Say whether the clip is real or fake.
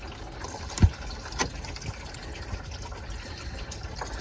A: real